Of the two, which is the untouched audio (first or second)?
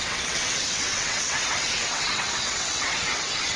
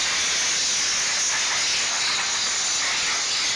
second